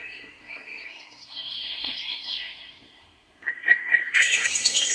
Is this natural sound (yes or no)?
no